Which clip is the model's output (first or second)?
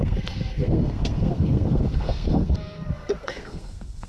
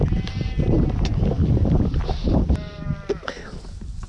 first